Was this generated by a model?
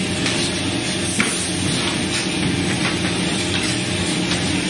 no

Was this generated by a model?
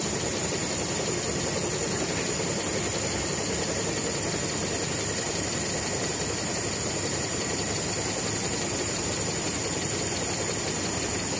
no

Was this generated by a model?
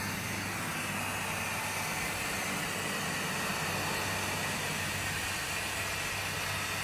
no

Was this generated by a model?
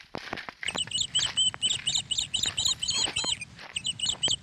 no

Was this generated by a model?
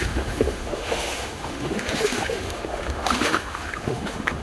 yes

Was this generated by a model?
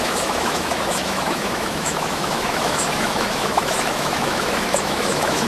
yes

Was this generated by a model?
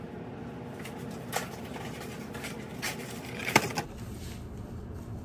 no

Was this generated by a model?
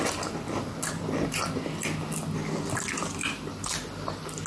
no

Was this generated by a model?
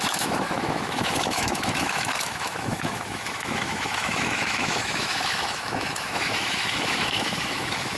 yes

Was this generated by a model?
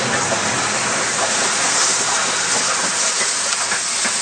no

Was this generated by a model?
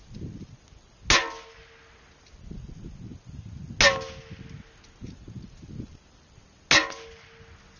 no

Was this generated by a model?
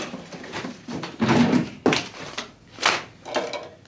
no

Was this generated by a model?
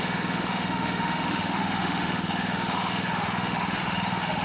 yes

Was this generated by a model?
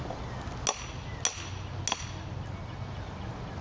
no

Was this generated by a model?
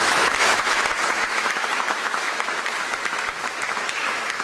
yes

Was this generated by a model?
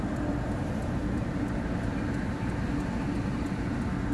no